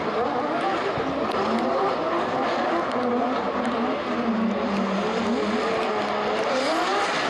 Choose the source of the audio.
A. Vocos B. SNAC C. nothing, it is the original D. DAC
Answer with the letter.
C